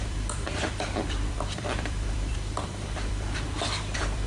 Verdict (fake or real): fake